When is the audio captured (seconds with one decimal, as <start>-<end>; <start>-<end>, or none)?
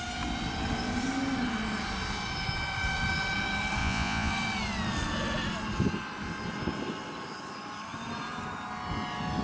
0.0-3.8; 4.3-9.4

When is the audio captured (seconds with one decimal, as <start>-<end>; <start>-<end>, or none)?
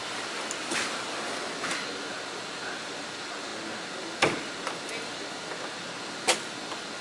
0.0-7.0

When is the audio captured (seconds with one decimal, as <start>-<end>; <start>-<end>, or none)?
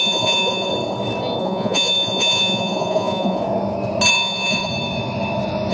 0.7-1.4; 3.4-4.1; 4.7-5.7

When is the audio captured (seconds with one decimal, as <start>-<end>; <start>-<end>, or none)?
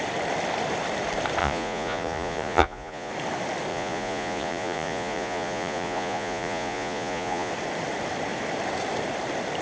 0.0-1.4; 3.1-3.7; 7.5-9.6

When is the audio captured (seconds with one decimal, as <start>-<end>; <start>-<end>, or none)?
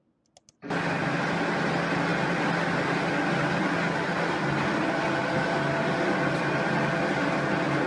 0.0-7.9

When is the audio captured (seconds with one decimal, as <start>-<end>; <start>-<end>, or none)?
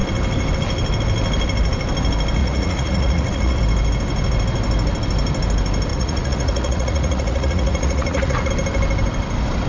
0.0-2.4; 3.6-5.9; 8.5-9.7